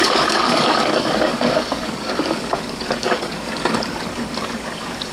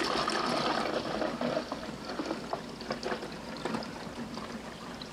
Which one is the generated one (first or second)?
first